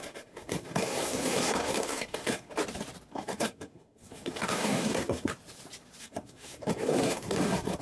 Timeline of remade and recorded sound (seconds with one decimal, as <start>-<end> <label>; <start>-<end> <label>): 0.0-2.5 remade; 2.5-3.1 recorded; 3.1-5.3 remade; 5.3-6.0 recorded; 6.0-7.8 remade